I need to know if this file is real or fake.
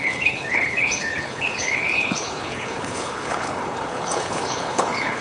fake